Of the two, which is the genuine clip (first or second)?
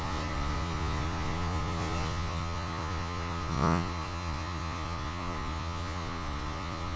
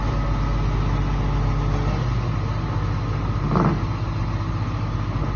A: second